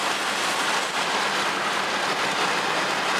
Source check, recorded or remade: recorded